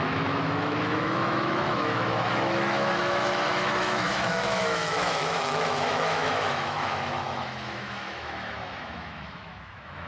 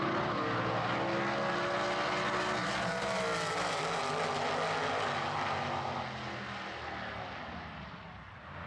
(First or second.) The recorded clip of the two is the second